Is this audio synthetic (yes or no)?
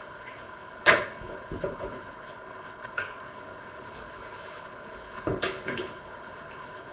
yes